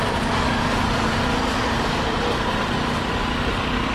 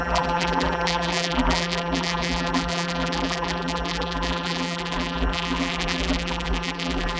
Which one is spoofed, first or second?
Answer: second